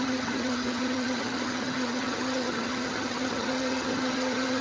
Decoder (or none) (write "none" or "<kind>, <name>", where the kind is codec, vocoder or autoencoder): vocoder, HiFi-GAN